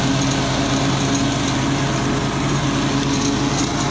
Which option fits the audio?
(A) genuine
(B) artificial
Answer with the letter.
A